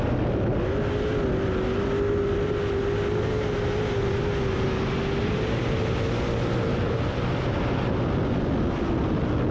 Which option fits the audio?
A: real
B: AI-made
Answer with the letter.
A